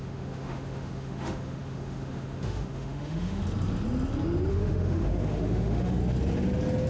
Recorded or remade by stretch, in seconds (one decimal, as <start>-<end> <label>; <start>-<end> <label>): 0.0-3.4 remade; 3.4-4.5 recorded; 4.5-6.0 remade; 6.0-6.9 recorded